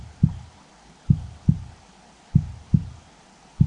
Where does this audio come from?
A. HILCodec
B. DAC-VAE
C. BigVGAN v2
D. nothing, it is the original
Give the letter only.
D